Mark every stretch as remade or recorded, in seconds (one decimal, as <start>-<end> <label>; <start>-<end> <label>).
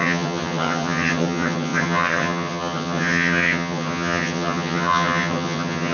0.0-5.9 remade